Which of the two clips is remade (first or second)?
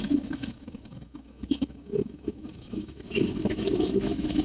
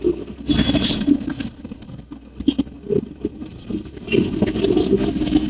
first